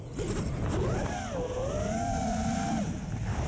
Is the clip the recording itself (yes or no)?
no